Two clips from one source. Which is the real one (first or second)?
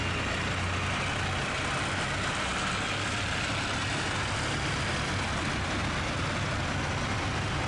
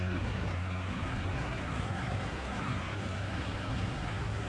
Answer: first